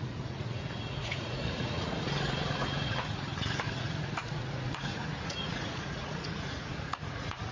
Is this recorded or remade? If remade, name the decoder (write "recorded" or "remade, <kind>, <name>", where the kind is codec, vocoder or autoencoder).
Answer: remade, vocoder, Vocos